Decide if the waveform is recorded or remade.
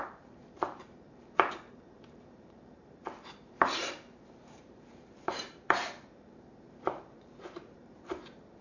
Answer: remade